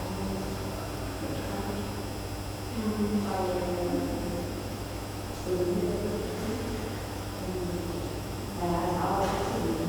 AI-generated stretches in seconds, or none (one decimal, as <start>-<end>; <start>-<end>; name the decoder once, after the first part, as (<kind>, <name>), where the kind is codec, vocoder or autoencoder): 4.4-8.5 (autoencoder, DAC-VAE)